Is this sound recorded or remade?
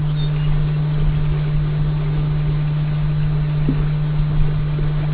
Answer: recorded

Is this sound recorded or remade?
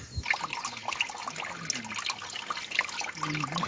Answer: recorded